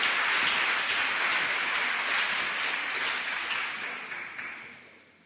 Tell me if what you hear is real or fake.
real